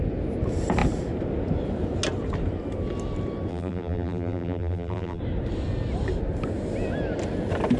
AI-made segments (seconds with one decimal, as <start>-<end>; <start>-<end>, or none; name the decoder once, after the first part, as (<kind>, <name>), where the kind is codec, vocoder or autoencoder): 3.5-5.2 (vocoder, BigVGAN v2)